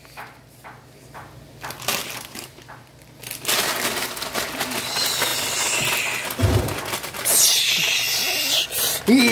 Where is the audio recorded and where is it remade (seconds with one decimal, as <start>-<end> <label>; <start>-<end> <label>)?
0.0-2.0 recorded; 2.0-3.1 remade; 3.1-9.3 recorded